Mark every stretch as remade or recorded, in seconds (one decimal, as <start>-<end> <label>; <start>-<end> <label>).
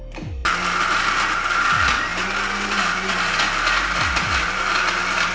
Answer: 0.0-5.3 recorded